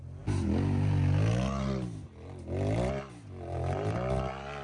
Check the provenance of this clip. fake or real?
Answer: real